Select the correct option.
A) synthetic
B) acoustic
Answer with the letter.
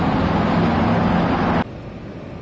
B